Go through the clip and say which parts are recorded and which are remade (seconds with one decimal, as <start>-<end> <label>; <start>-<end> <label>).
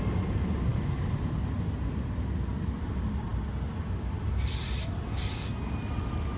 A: 0.0-6.4 recorded